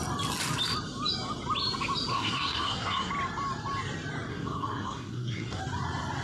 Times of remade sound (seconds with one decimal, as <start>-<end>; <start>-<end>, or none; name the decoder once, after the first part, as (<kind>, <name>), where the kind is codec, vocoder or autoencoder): 2.1-3.1 (codec, SNAC); 4.3-5.6

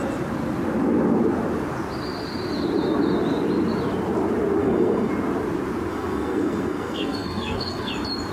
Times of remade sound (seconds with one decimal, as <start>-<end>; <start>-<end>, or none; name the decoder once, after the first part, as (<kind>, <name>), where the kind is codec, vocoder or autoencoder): 4.6-5.1 (codec, SNAC); 5.9-7.9